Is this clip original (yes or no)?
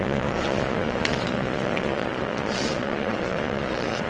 no